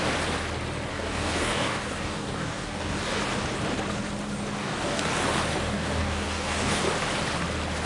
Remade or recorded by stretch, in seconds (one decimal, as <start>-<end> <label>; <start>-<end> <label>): 0.0-0.9 recorded; 0.9-3.2 remade; 3.2-4.6 recorded; 4.6-5.1 remade; 5.1-5.5 recorded; 5.5-6.8 remade; 6.8-7.9 recorded